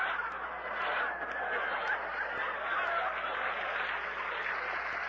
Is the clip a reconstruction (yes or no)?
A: no